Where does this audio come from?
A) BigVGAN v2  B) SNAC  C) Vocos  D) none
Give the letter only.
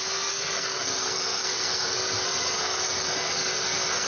B